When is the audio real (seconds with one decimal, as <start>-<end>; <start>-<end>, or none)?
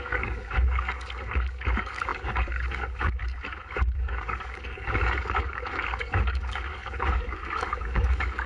none